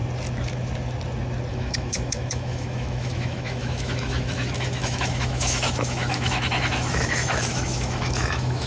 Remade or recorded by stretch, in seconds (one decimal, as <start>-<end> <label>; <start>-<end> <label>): 0.0-1.5 recorded; 1.5-8.7 remade